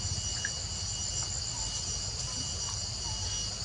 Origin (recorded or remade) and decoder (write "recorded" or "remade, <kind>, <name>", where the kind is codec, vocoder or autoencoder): recorded